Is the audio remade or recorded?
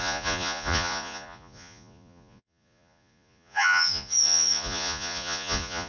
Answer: remade